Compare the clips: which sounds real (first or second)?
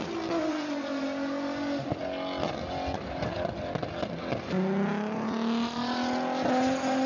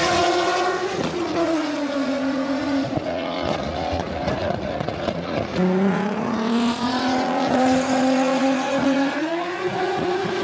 first